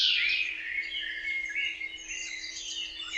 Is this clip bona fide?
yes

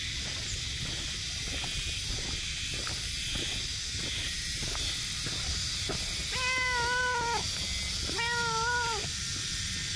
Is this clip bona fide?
yes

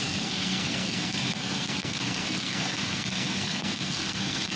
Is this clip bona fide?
no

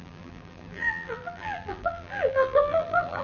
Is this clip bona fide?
no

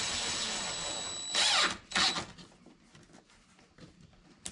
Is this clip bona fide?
yes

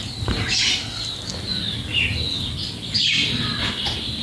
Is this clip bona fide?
yes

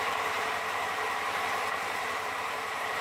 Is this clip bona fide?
no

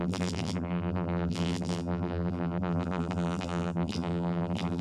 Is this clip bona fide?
no